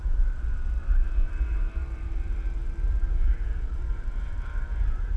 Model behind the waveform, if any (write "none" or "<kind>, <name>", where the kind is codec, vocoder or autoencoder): vocoder, BigVGAN v2